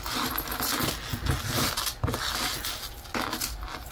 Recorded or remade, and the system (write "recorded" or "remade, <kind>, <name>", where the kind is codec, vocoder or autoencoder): recorded